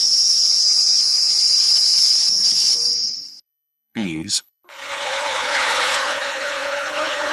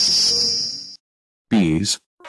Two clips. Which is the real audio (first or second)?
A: second